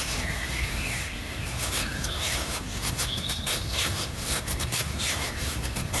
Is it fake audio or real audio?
fake